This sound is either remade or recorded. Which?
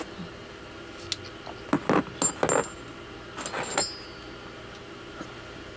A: recorded